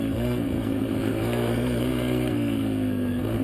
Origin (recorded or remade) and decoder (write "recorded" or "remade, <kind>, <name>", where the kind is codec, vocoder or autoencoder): remade, codec, SNAC